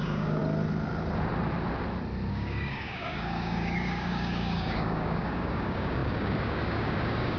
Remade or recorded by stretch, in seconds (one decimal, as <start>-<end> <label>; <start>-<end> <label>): 0.0-0.4 remade; 0.4-2.3 recorded; 2.3-7.4 remade